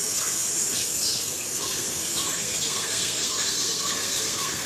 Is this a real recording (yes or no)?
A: no